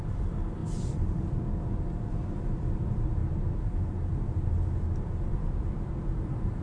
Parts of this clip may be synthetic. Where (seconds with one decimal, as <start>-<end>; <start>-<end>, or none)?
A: 0.0-3.2; 4.1-6.6